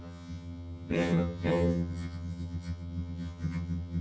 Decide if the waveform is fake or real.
fake